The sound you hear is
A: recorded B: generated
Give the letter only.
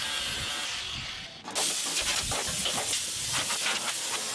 A